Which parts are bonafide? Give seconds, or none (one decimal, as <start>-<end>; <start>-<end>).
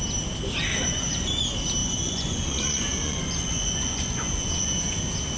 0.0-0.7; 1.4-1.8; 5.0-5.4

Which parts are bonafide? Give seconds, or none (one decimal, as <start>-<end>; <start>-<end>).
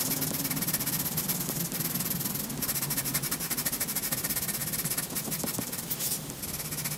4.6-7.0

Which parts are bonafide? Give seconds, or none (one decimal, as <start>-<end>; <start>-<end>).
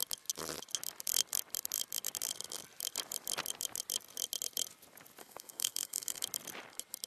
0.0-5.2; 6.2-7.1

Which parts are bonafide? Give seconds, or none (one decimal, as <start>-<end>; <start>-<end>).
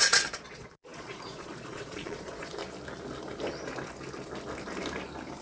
2.6-5.4